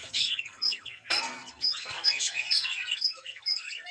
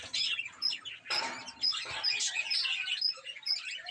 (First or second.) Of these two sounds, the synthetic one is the first